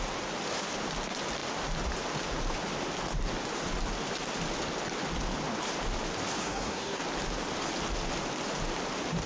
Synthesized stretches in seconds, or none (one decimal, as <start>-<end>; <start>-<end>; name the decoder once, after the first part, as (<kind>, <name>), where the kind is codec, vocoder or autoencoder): 6.4-7.0 (codec, SNAC)

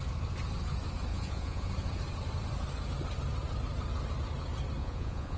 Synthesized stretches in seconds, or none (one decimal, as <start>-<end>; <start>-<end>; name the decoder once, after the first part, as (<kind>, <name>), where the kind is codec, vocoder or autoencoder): 1.1-1.7 (vocoder, Vocos); 4.8-5.4

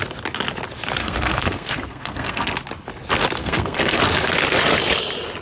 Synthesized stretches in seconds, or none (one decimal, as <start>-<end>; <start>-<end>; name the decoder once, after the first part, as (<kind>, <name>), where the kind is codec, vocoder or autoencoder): 1.0-2.5 (codec, SNAC); 3.4-4.0

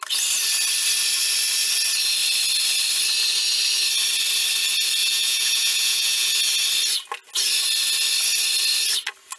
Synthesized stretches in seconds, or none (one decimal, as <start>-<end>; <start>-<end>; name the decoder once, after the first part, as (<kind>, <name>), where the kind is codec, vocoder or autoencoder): 5.0-6.3 (vocoder, Vocos)

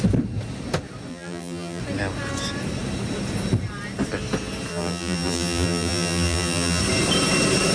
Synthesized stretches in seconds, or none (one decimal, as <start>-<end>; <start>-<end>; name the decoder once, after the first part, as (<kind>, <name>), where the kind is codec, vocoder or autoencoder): 1.1-1.8 (vocoder, BigVGAN v2); 4.7-6.8

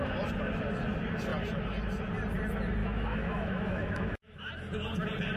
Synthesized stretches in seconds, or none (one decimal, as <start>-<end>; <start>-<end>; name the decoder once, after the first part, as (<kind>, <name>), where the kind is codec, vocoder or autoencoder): 2.8-4.5 (autoencoder, DAC-VAE)